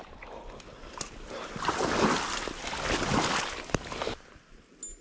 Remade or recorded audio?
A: recorded